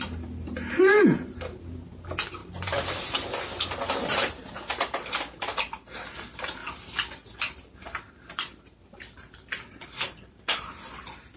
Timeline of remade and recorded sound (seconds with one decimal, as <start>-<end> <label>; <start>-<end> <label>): 0.0-6.6 remade; 6.6-7.4 recorded; 7.4-11.4 remade